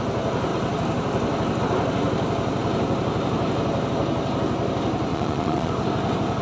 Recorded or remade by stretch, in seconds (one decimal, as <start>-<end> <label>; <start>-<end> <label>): 0.0-5.1 recorded; 5.1-5.7 remade; 5.7-6.4 recorded